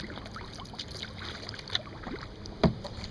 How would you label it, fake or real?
real